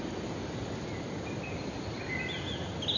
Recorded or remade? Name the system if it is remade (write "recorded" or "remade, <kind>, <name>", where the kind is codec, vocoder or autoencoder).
recorded